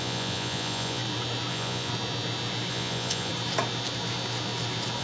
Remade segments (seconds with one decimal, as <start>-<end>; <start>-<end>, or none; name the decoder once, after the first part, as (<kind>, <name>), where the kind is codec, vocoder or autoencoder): 0.0-1.0 (vocoder, Vocos); 1.5-1.9; 2.7-3.3